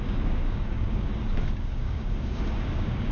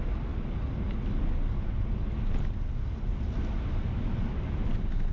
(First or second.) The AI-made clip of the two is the first